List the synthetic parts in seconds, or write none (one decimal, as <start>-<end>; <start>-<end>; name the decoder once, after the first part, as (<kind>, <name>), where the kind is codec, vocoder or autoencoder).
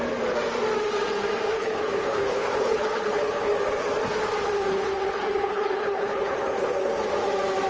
1.5-3.5 (codec, HILCodec); 4.7-6.9